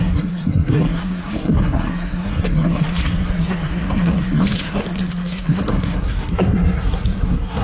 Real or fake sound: fake